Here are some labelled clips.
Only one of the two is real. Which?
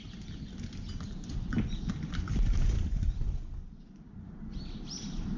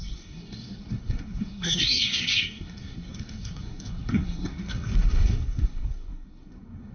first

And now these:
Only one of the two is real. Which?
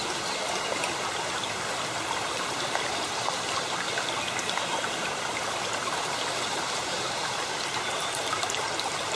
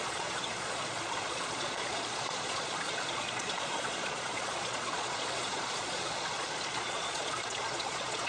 first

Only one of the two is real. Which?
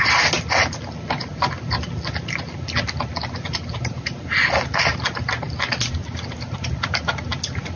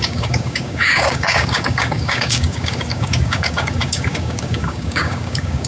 first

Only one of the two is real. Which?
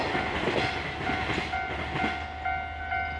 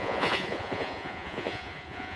first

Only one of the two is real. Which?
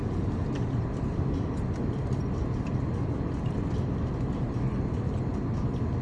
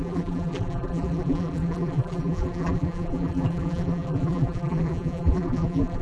first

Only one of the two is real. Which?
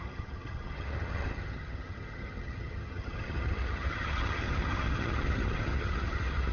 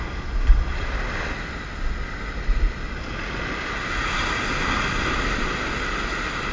second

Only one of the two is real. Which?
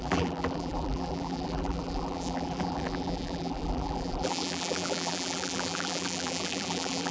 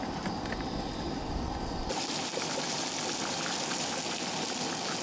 second